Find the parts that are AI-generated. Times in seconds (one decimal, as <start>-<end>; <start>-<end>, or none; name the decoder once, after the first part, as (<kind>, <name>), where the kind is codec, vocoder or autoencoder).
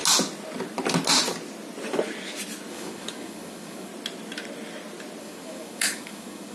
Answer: 2.7-3.9 (codec, DAC); 5.2-6.5